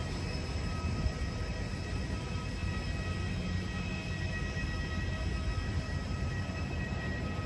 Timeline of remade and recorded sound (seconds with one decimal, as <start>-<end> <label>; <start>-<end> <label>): 0.0-2.6 remade; 2.6-3.2 recorded; 3.2-3.9 remade; 3.9-5.7 recorded; 5.7-7.5 remade